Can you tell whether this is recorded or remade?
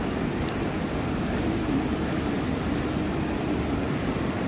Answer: recorded